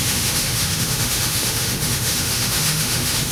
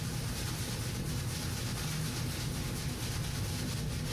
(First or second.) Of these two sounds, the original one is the second